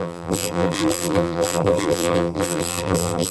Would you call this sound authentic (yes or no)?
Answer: no